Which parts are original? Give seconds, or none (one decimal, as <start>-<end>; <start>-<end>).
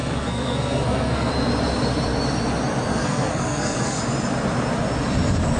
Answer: 1.3-2.9; 4.0-5.6